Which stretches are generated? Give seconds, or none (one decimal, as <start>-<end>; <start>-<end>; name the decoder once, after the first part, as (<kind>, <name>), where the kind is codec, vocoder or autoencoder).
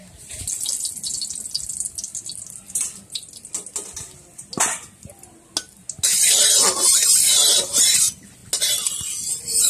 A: none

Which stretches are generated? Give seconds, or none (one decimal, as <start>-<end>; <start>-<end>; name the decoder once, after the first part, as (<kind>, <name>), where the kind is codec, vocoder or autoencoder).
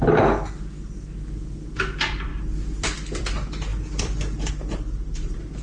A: 3.7-4.5 (vocoder, BigVGAN v2)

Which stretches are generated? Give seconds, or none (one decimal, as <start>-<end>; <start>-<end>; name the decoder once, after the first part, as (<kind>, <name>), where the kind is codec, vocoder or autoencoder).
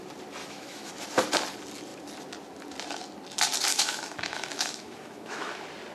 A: 0.4-0.9 (autoencoder, DAC-VAE); 3.7-5.5